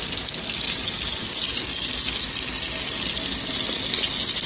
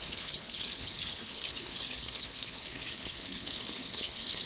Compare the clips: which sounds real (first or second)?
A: first